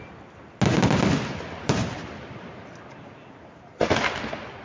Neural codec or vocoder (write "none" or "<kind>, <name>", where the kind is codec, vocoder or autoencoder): none